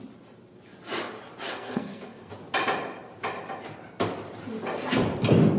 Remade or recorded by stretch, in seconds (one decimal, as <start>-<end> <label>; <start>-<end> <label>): 0.0-1.5 recorded; 1.5-2.3 remade; 2.3-5.6 recorded